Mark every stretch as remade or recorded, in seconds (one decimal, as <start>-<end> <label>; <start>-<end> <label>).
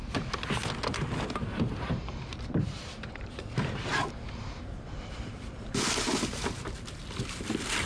0.0-2.3 recorded; 2.3-7.0 remade; 7.0-7.9 recorded